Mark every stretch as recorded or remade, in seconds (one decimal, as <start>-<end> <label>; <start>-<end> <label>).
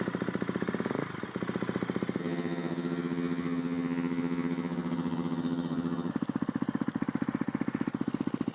0.0-2.2 recorded; 2.2-6.1 remade; 6.1-8.5 recorded